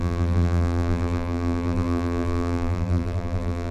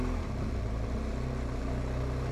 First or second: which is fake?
first